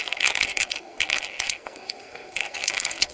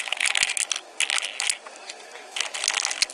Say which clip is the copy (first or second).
first